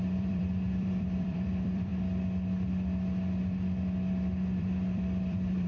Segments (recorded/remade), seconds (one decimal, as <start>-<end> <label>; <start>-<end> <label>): 0.0-1.9 remade; 1.9-4.6 recorded; 4.6-5.7 remade